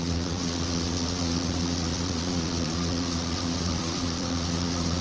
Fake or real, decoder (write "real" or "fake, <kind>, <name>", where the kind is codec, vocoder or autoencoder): fake, vocoder, Vocos